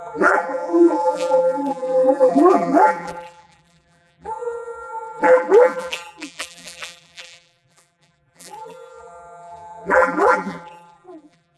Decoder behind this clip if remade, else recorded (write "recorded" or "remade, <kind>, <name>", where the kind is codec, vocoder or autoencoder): remade, vocoder, BigVGAN v2